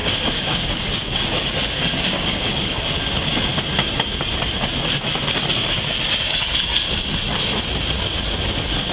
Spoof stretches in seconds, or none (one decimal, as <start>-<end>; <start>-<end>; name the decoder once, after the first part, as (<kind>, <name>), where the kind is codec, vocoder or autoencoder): 0.0-2.8 (codec, DAC)